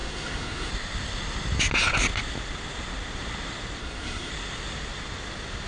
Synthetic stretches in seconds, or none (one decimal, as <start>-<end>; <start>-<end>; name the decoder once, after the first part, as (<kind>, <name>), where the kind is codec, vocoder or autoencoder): 0.0-0.7 (codec, SNAC); 3.8-4.3